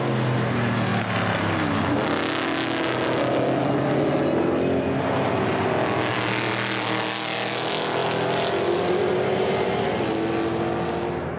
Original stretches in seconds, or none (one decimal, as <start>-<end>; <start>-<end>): 0.0-8.0; 8.9-11.4